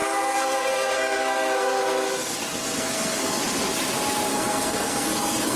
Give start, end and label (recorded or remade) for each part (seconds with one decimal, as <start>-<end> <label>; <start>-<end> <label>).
0.0-3.4 remade; 3.4-4.3 recorded; 4.3-5.6 remade